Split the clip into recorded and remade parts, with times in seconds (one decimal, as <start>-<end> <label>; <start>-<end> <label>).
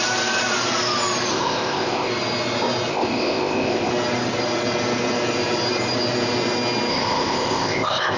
0.0-1.3 recorded; 1.3-2.1 remade; 2.1-2.9 recorded; 2.9-3.9 remade; 3.9-6.9 recorded; 6.9-8.2 remade